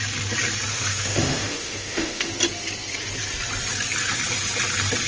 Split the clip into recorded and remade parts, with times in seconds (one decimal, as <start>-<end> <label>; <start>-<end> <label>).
0.0-0.7 recorded; 0.7-2.3 remade; 2.3-5.1 recorded